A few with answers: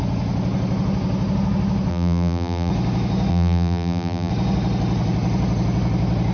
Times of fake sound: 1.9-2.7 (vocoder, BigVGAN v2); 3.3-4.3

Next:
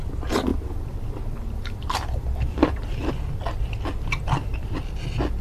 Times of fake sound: 0.5-3.1 (vocoder, BigVGAN v2); 4.5-5.0

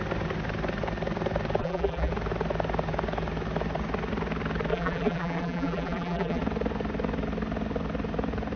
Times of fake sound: 1.6-2.1 (vocoder, BigVGAN v2); 4.7-6.4

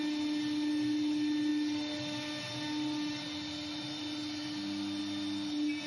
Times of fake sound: none

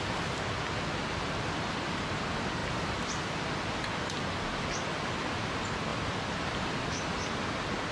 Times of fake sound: none

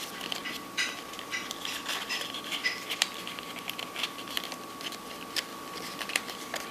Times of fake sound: 0.0-6.7 (vocoder, BigVGAN v2)

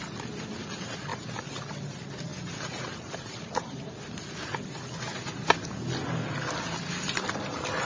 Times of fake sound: 1.1-1.7 (vocoder, BigVGAN v2); 2.3-3.9